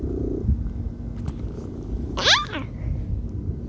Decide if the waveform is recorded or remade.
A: recorded